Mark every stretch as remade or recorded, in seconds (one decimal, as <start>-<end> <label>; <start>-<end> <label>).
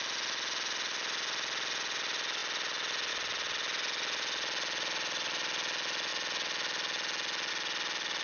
0.0-8.2 recorded